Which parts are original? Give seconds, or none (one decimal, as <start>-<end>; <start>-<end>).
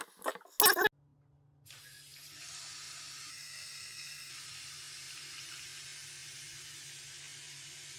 0.0-3.3; 4.3-8.0